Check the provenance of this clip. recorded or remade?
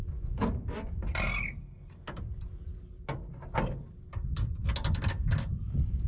recorded